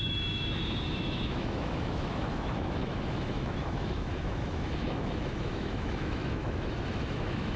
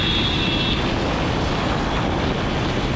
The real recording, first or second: second